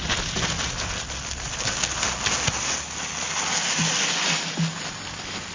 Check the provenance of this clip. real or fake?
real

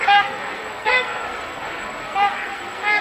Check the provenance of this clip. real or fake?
fake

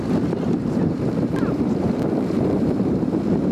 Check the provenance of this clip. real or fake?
fake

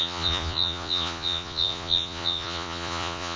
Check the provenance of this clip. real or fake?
fake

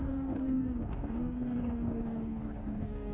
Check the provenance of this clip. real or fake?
fake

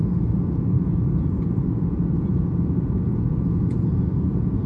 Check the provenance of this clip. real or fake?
fake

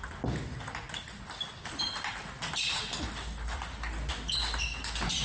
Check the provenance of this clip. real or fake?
real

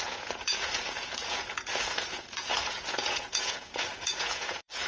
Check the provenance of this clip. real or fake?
fake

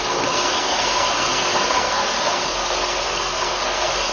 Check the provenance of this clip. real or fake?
fake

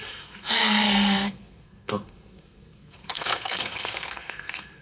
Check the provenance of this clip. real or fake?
fake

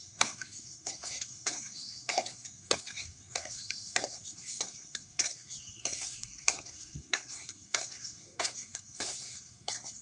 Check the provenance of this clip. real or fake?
fake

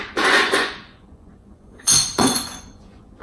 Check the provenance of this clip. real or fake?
fake